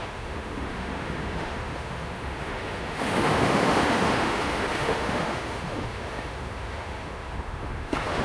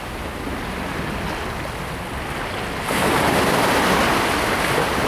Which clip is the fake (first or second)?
first